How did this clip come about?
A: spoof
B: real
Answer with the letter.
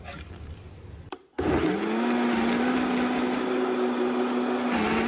B